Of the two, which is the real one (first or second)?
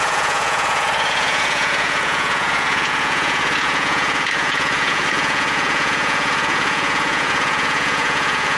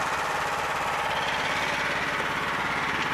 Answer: second